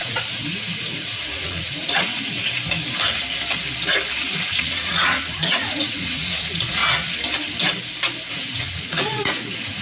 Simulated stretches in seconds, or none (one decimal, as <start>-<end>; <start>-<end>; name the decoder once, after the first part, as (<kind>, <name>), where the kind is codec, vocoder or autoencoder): 0.0-2.4 (vocoder, Vocos); 4.2-6.8; 8.3-9.8